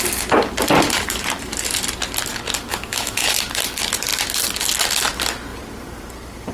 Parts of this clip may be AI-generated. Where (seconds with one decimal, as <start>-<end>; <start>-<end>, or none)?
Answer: 2.7-3.3